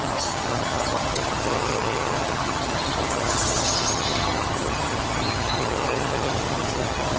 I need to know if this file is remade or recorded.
remade